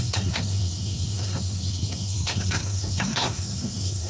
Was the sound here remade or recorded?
remade